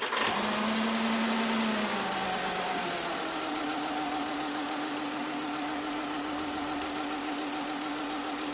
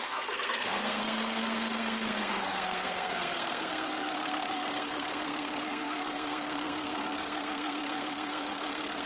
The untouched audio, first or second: first